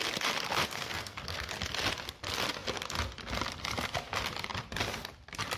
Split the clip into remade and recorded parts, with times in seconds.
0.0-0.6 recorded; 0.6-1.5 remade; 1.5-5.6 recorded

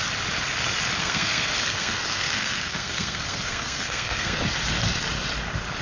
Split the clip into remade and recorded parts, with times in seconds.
0.0-1.0 recorded; 1.0-4.4 remade; 4.4-5.8 recorded

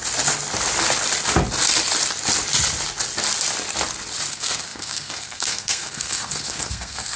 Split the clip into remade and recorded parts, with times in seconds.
0.0-4.3 recorded; 4.3-7.2 remade

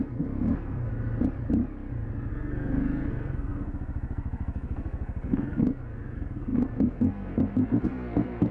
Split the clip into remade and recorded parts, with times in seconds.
0.0-0.9 remade; 0.9-2.3 recorded; 2.3-8.5 remade

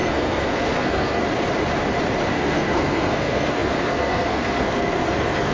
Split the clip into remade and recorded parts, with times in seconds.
0.0-1.2 remade; 1.2-2.3 recorded; 2.3-5.5 remade

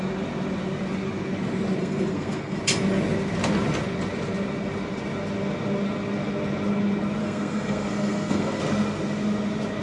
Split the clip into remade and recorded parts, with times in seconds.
0.0-1.8 recorded; 1.8-2.6 remade; 2.6-7.2 recorded; 7.2-8.6 remade; 8.6-9.8 recorded

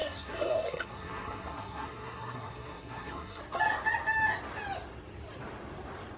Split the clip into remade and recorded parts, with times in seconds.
0.0-3.4 remade; 3.4-6.2 recorded